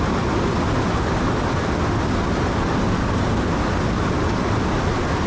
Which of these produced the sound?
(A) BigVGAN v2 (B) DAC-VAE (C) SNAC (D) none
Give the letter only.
D